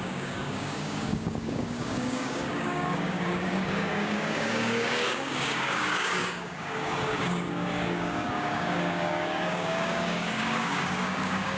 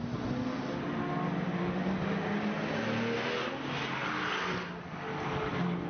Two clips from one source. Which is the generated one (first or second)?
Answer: first